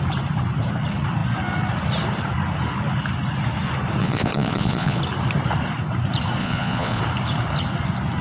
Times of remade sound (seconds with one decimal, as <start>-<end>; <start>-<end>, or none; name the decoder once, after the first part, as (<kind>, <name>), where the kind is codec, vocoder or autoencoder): 4.0-5.0 (vocoder, Vocos); 6.4-7.0